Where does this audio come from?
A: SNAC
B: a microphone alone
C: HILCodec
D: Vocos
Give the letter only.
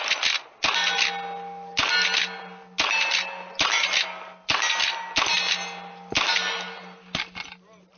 B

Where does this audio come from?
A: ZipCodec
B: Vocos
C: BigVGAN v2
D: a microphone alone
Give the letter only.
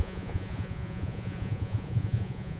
B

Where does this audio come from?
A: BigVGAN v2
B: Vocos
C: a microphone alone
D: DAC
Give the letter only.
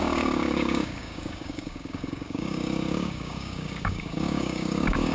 D